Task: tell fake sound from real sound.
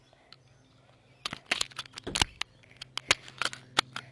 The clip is real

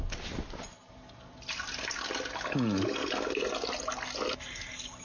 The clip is real